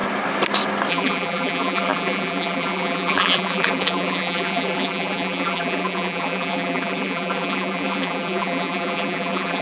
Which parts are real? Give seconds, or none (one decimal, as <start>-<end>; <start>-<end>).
0.0-0.9